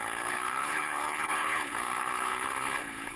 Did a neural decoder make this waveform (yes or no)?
yes